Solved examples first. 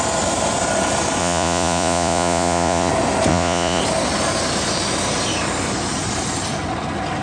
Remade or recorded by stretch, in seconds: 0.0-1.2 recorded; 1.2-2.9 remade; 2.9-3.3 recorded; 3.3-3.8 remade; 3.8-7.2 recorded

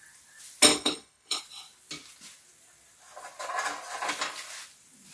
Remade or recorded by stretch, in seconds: 0.0-0.7 recorded; 0.7-1.4 remade; 1.4-5.1 recorded

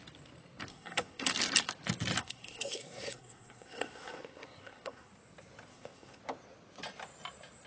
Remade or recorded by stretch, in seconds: 0.0-0.7 recorded; 0.7-1.3 remade; 1.3-2.2 recorded; 2.2-5.1 remade; 5.1-5.7 recorded; 5.7-6.2 remade; 6.2-7.7 recorded

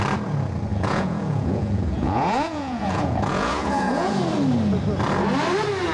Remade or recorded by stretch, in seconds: 0.0-0.7 recorded; 0.7-4.2 remade; 4.2-5.9 recorded

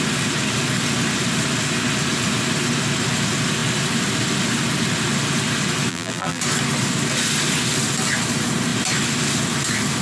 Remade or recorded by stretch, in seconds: 0.0-5.9 recorded; 5.9-6.4 remade; 6.4-10.0 recorded

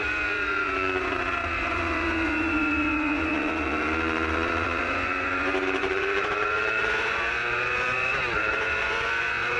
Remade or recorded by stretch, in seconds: 0.0-9.6 remade

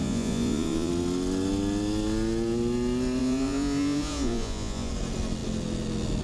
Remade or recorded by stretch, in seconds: 0.0-0.9 remade; 0.9-3.2 recorded; 3.2-4.9 remade; 4.9-6.2 recorded